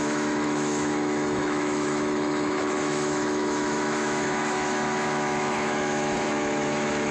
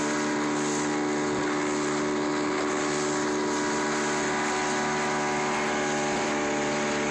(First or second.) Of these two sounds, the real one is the second